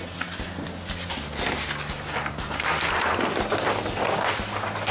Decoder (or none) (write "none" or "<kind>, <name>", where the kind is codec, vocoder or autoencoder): none